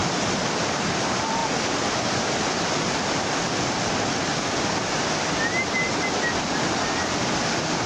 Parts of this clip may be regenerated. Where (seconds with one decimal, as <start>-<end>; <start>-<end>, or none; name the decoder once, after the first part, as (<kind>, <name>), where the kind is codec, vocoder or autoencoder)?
none

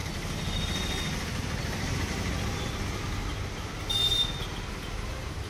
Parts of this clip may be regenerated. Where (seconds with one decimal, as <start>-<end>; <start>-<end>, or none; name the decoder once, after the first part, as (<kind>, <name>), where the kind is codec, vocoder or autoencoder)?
none

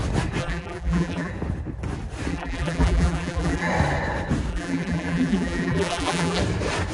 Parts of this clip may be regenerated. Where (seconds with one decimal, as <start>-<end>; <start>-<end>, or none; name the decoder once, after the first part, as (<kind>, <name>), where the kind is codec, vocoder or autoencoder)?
0.4-1.3 (vocoder, BigVGAN v2); 2.3-3.7; 4.5-6.4